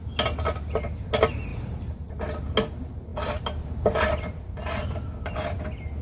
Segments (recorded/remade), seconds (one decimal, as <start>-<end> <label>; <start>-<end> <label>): 0.0-1.5 recorded; 1.5-2.1 remade; 2.1-6.0 recorded